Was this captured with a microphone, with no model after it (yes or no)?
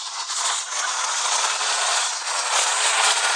no